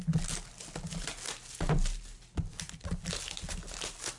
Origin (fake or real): real